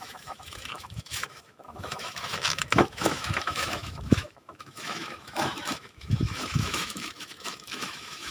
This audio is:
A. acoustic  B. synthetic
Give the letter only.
B